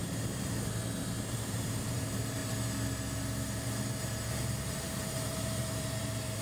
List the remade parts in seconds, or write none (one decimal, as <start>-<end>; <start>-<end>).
1.3-2.4; 4.3-6.4